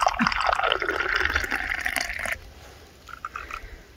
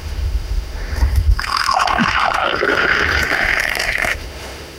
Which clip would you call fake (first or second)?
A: second